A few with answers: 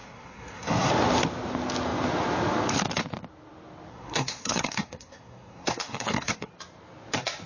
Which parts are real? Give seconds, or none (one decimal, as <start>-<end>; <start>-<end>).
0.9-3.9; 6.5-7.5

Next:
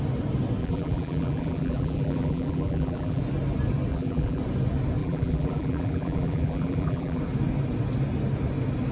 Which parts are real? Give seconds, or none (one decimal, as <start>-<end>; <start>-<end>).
0.0-0.6; 3.2-3.9; 4.4-5.0; 7.2-8.9

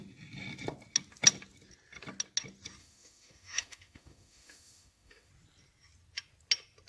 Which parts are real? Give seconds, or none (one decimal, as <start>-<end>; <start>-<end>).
0.0-2.8; 5.3-6.9

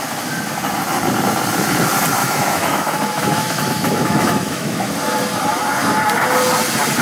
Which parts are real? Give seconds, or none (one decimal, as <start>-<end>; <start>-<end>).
0.0-2.2; 4.9-7.0

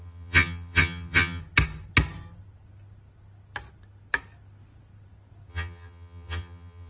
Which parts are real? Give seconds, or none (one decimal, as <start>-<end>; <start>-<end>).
1.4-5.5